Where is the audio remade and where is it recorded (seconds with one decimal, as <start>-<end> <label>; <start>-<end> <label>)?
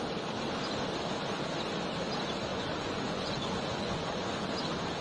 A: 0.0-2.5 recorded; 2.5-4.4 remade; 4.4-5.0 recorded